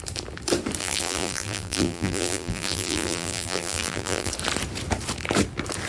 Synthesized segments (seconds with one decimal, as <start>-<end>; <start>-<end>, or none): 0.8-4.3